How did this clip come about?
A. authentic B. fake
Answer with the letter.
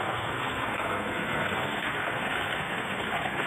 B